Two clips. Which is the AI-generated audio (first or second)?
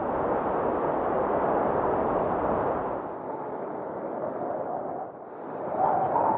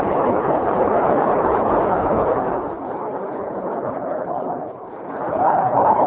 second